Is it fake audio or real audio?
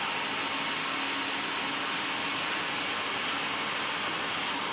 real